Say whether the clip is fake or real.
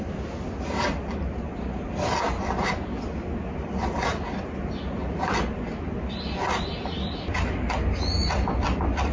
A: real